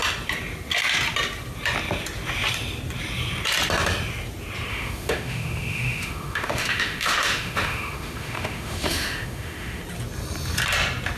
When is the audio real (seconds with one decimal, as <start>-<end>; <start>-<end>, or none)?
0.0-4.7; 9.8-11.2